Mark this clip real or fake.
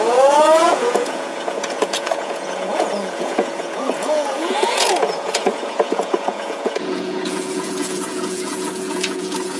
fake